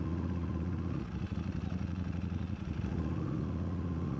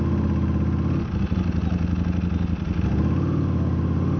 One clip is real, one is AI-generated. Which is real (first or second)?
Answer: second